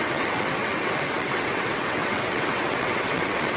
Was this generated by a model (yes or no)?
yes